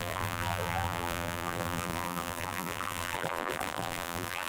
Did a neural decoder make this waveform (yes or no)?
yes